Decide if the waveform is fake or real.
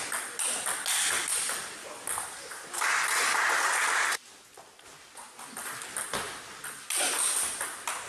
real